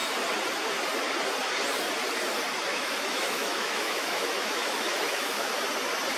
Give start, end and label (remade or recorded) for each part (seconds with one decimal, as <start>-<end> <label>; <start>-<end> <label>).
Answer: 0.0-2.7 recorded; 2.7-5.5 remade; 5.5-6.2 recorded